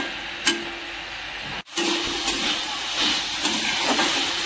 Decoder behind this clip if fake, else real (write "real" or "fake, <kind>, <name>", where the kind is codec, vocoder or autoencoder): real